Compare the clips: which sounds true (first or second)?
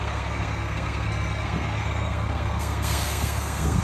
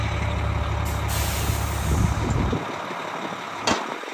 second